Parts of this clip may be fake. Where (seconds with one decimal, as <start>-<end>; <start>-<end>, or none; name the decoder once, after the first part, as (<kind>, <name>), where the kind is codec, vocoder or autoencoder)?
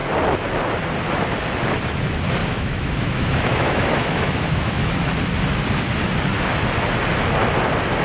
2.4-5.1 (autoencoder, DAC-VAE)